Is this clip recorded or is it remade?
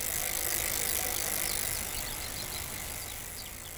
recorded